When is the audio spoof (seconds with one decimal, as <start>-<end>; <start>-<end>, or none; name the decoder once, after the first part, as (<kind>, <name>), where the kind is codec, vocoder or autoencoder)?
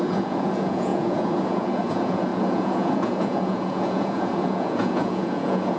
0.0-5.8 (vocoder, Vocos)